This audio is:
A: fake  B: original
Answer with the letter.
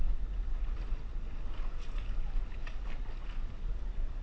B